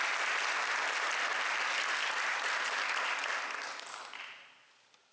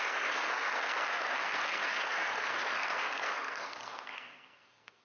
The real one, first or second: first